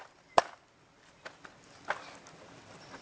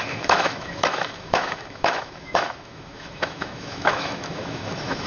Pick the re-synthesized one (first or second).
second